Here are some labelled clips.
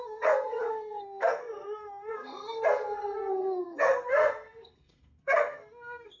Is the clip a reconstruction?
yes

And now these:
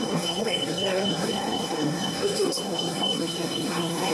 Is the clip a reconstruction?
yes